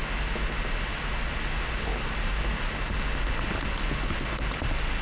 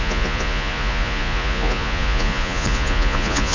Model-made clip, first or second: second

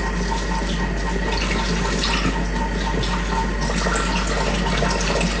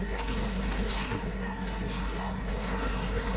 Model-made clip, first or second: second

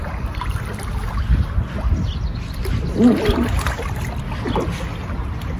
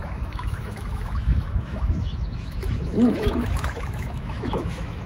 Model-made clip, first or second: second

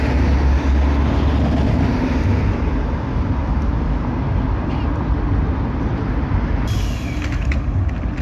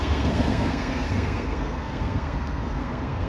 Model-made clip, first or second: second